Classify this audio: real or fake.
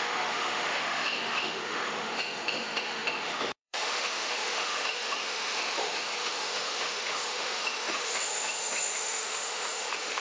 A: fake